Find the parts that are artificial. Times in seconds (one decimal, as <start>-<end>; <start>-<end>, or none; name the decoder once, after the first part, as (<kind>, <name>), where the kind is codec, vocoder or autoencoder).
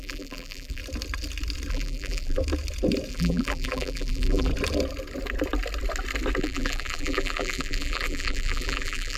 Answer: 0.0-0.8 (vocoder, BigVGAN v2); 1.7-2.4; 3.1-4.5; 6.4-9.2